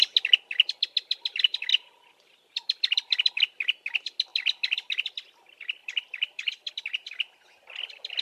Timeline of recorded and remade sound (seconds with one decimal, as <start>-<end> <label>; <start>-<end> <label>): 0.0-1.7 recorded; 1.7-3.4 remade; 3.4-5.8 recorded; 5.8-6.7 remade; 6.7-8.2 recorded